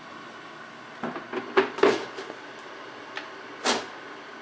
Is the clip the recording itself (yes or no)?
yes